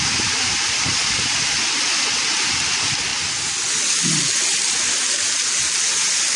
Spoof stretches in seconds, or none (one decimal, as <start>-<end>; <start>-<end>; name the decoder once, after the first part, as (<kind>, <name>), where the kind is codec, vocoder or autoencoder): none